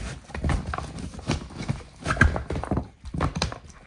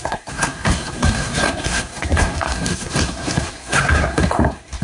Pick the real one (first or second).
first